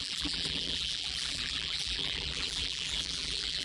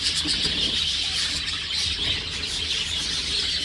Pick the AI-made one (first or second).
first